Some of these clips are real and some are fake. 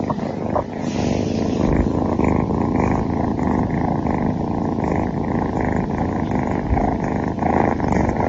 real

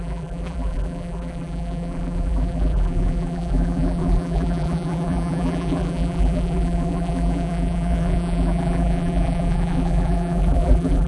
fake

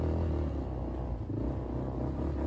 real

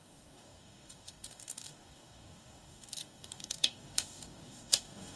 fake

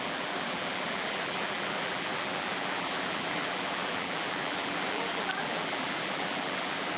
fake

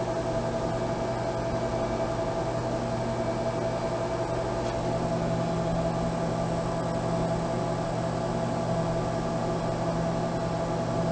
real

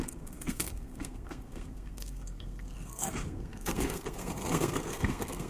fake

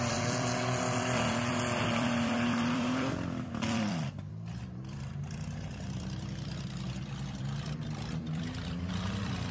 fake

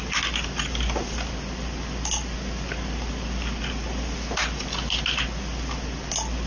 real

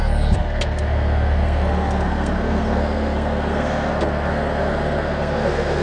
fake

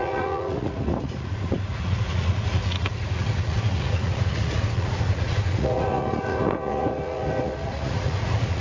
fake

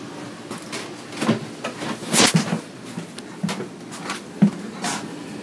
real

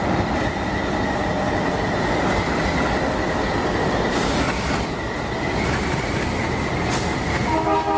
real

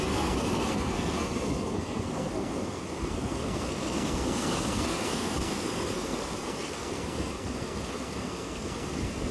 fake